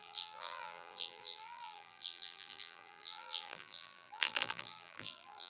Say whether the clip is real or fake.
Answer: fake